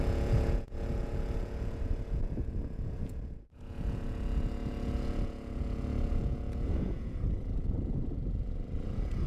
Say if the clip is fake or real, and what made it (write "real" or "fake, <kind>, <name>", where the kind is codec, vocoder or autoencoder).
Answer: fake, vocoder, Vocos